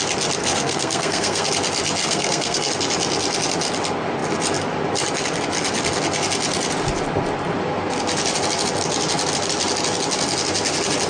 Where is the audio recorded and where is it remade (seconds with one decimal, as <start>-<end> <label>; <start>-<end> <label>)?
0.0-0.4 recorded; 0.4-1.5 remade; 1.5-2.0 recorded; 2.0-2.7 remade; 2.7-11.1 recorded

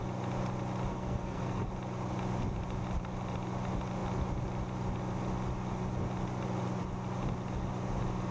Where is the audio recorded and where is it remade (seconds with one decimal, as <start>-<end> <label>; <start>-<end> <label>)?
0.0-0.9 recorded; 0.9-1.7 remade; 1.7-8.3 recorded